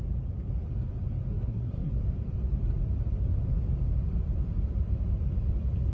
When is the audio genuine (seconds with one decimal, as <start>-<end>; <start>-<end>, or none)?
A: 0.0-1.3; 1.9-5.9